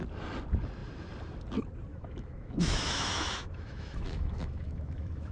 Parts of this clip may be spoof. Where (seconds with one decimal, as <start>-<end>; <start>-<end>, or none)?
1.9-5.3